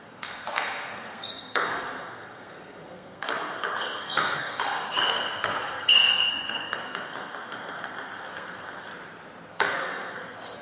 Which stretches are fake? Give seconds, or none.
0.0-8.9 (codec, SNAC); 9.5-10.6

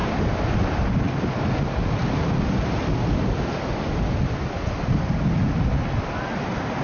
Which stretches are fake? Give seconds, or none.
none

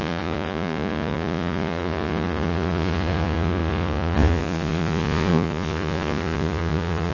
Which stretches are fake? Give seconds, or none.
0.0-7.1 (vocoder, Vocos)